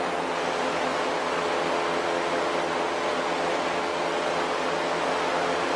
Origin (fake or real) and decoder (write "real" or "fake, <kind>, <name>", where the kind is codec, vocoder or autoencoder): real